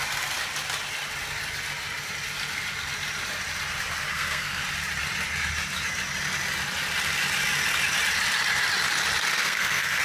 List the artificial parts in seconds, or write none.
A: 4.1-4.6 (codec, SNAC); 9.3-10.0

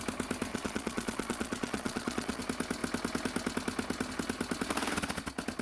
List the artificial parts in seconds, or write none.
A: 0.5-2.4 (vocoder, Vocos)

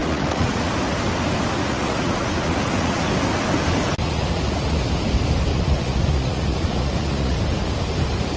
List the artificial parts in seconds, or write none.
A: 0.0-0.7 (vocoder, Vocos); 1.6-3.1; 4.0-4.8; 5.5-7.4

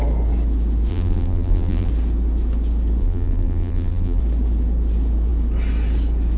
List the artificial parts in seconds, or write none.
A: 0.9-1.9 (vocoder, BigVGAN v2); 3.0-4.2

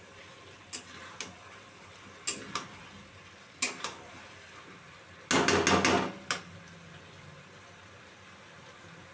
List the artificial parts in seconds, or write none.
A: none

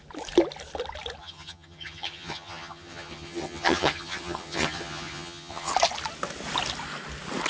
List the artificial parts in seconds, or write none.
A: 1.2-5.7 (vocoder, HiFi-GAN)

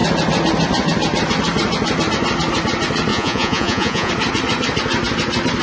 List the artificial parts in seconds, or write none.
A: 3.1-4.1 (vocoder, Vocos)

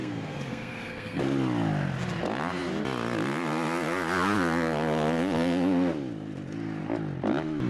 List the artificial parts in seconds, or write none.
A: 0.0-1.2 (codec, SNAC)